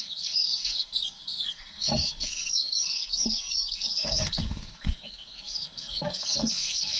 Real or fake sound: fake